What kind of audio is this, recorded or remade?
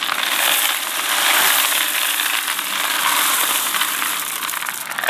remade